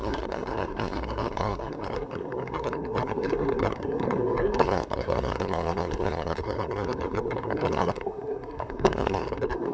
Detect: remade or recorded remade